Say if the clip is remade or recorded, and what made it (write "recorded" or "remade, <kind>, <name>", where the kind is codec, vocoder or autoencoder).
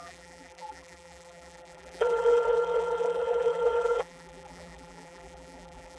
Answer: remade, vocoder, BigVGAN v2